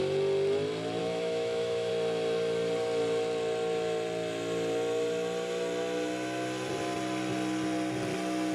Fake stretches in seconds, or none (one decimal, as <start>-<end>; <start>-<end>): 1.0-1.9